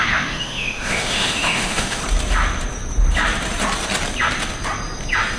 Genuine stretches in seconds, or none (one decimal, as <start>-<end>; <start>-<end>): 2.0-5.4